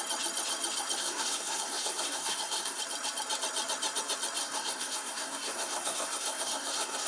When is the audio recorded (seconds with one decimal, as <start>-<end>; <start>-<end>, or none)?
0.0-1.0; 2.8-4.4